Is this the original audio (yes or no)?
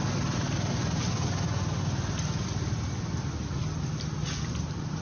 yes